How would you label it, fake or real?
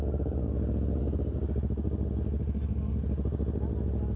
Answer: real